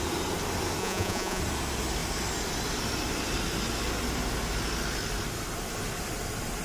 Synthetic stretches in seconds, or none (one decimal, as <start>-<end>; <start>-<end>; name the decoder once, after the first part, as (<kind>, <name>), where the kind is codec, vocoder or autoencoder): 0.8-1.4 (vocoder, Vocos)